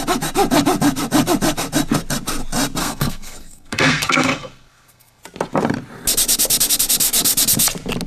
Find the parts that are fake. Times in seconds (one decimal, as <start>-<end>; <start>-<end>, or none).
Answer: 2.8-5.2

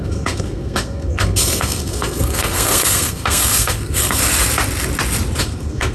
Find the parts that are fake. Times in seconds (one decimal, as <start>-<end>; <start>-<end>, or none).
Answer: 0.0-4.2; 5.4-5.9

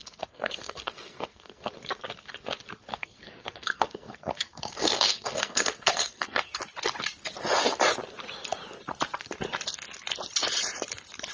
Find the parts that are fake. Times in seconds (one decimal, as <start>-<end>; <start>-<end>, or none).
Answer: 0.0-1.7; 2.9-6.6

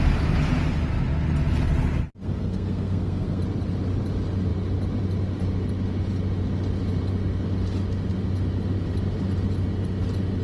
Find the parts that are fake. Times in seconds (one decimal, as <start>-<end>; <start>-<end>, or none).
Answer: 2.1-3.4